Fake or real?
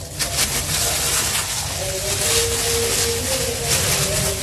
real